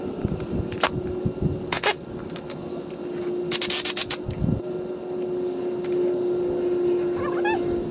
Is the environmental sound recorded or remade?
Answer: recorded